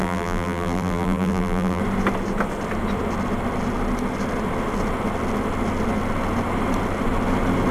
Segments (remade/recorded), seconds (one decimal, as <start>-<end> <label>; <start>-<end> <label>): 0.0-1.8 remade; 1.8-7.7 recorded